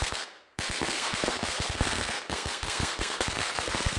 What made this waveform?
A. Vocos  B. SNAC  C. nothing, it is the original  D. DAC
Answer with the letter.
B